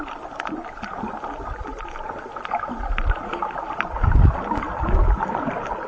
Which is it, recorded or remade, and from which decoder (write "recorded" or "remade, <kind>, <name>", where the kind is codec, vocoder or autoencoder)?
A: recorded